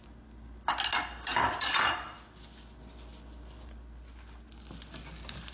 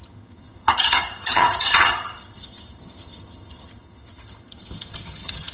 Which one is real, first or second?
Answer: first